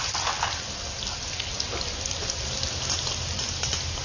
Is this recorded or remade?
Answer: recorded